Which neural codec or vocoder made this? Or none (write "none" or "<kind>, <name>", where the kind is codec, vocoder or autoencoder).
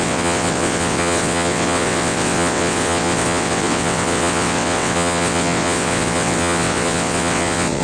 vocoder, WaveNeXt